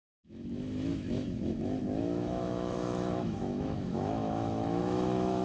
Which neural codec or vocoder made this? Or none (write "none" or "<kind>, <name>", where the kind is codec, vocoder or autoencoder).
autoencoder, DAC-VAE